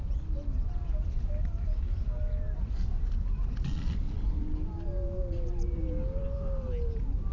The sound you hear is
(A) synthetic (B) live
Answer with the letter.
B